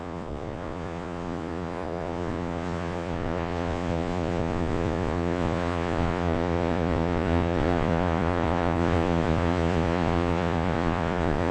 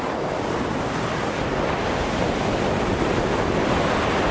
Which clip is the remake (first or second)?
first